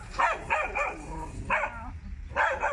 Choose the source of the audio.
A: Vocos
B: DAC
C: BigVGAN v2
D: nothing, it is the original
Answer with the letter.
D